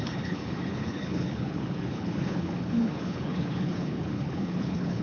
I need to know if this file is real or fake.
fake